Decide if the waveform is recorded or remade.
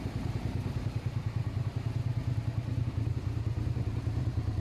remade